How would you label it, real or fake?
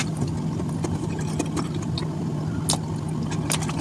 real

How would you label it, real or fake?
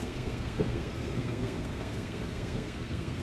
fake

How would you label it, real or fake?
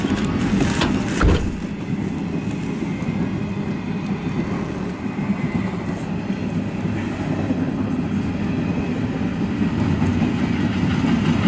real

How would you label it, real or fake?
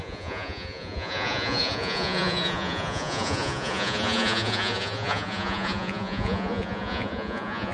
fake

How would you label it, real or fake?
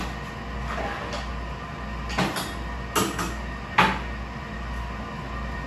real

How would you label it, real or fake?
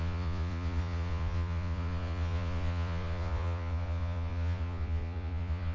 fake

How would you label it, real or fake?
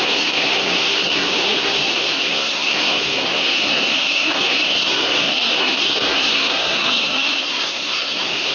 fake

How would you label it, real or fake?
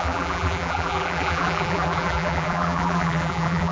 fake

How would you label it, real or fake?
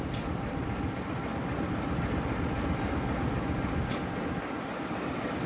real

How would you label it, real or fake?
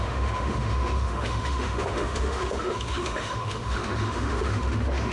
fake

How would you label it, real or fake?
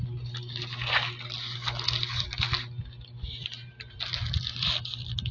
real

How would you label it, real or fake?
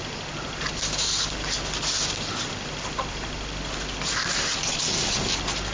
real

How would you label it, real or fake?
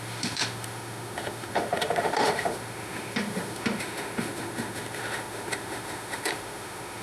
fake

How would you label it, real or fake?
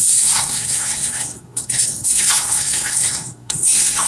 fake